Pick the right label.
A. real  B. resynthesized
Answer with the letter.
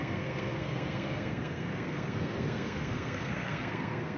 B